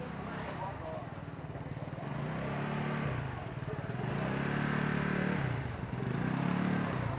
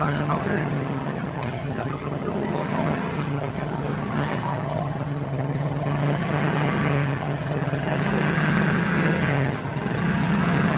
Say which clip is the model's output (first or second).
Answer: second